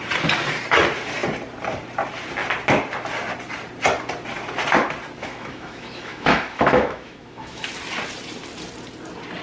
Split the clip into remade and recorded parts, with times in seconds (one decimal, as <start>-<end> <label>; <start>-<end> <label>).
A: 0.0-5.2 recorded; 5.2-7.7 remade; 7.7-9.4 recorded